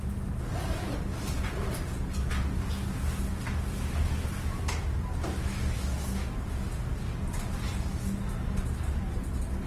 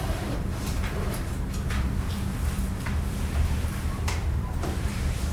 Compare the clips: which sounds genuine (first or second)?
first